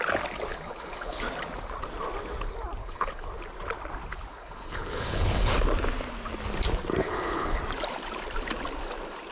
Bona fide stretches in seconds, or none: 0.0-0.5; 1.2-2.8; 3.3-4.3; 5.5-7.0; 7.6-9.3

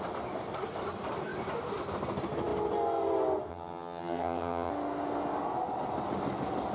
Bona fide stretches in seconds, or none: 0.0-3.5; 4.7-6.7

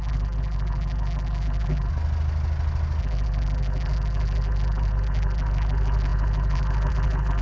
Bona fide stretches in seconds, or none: 1.9-3.0

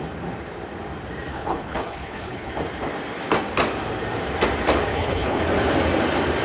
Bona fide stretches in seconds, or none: 0.0-1.3; 2.5-4.9; 5.4-6.4